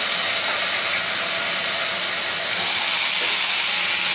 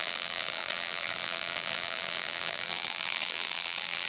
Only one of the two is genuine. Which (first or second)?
first